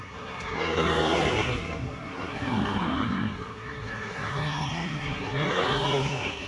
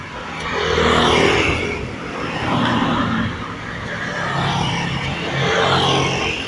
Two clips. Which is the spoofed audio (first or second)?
first